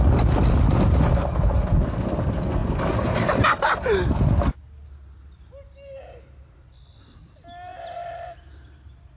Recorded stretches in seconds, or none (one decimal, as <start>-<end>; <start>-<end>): 0.0-9.2